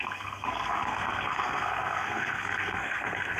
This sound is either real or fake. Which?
fake